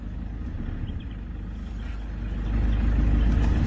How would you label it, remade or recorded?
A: recorded